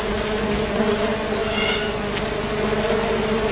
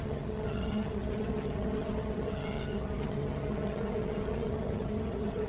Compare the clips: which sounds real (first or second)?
first